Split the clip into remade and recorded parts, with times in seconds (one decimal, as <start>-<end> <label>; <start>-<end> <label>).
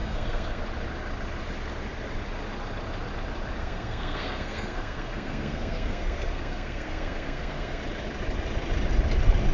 0.0-0.6 remade; 0.6-3.6 recorded; 3.6-7.8 remade; 7.8-9.5 recorded